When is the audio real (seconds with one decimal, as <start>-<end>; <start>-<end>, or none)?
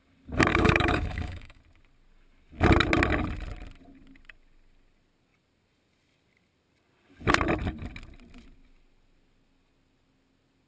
0.0-0.5; 1.6-10.7